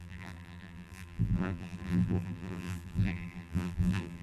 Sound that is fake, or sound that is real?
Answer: fake